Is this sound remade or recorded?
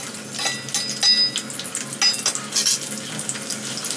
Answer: recorded